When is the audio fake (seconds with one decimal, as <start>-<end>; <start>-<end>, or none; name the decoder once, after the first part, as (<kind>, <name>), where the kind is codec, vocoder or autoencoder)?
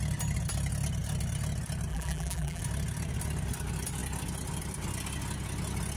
1.9-2.6 (vocoder, BigVGAN v2)